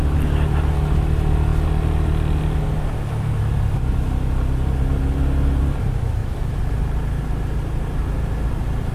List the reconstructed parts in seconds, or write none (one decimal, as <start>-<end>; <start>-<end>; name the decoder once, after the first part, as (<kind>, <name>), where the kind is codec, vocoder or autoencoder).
none